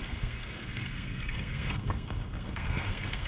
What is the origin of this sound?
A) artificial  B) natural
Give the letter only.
A